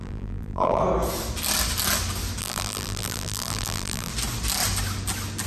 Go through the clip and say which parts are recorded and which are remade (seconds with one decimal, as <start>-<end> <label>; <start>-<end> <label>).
0.0-0.8 remade; 0.8-2.4 recorded; 2.4-4.1 remade; 4.1-5.5 recorded